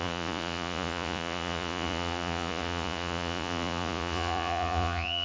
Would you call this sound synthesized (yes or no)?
yes